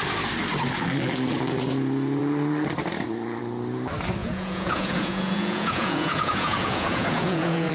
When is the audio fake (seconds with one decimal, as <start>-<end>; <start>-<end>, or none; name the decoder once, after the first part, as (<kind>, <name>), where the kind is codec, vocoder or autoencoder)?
4.2-7.7 (vocoder, Vocos)